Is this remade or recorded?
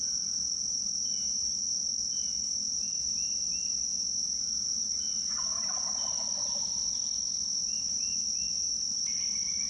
recorded